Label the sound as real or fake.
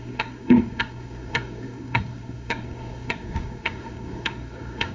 fake